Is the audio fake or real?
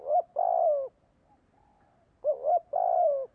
real